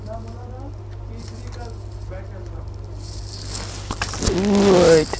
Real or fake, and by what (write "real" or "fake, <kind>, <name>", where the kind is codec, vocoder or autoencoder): real